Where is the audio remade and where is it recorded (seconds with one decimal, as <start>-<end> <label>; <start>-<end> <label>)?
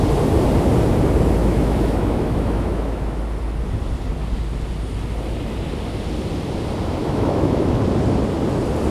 0.0-1.4 recorded; 1.4-3.2 remade; 3.2-7.0 recorded; 7.0-7.8 remade; 7.8-8.9 recorded